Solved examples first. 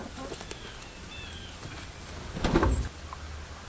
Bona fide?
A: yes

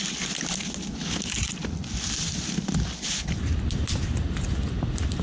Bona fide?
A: yes